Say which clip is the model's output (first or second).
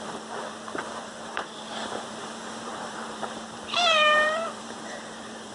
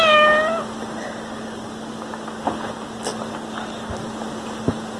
first